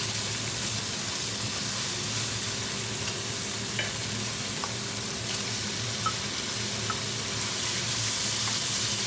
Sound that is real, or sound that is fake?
real